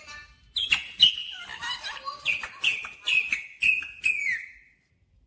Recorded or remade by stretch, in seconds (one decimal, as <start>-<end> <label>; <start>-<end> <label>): 0.0-5.3 recorded

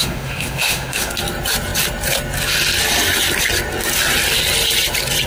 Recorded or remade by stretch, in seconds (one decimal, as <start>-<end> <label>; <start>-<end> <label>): 0.0-1.1 remade; 1.1-5.3 recorded

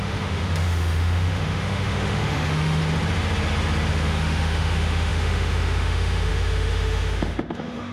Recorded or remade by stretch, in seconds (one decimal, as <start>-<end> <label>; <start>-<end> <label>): 0.0-2.8 remade; 2.8-3.9 recorded; 3.9-7.9 remade

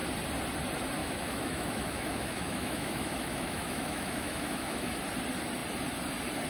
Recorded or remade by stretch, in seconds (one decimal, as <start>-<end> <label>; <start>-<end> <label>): 0.0-1.0 recorded; 1.0-4.9 remade; 4.9-6.5 recorded